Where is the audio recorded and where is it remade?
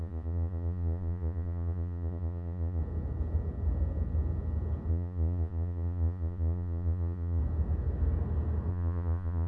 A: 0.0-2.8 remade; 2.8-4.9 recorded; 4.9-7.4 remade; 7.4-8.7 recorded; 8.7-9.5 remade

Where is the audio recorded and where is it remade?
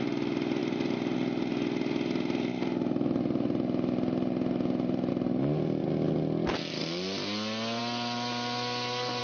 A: 0.0-9.2 recorded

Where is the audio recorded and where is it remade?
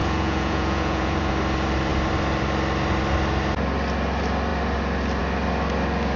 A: 0.0-1.3 remade; 1.3-6.2 recorded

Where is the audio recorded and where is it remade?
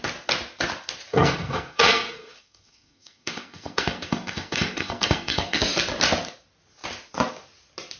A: 0.0-1.1 recorded; 1.1-5.6 remade; 5.6-8.0 recorded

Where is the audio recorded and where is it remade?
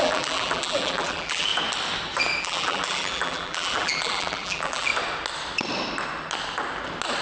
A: 0.0-1.5 remade; 1.5-2.4 recorded; 2.4-4.9 remade; 4.9-7.2 recorded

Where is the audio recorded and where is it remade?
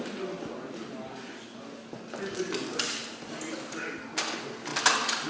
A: 0.0-5.3 recorded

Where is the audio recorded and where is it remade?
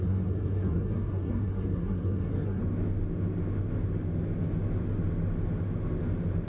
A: 0.0-2.6 remade; 2.6-6.5 recorded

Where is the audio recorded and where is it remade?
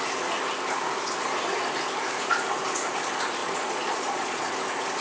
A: 0.0-3.4 recorded; 3.4-4.5 remade; 4.5-5.0 recorded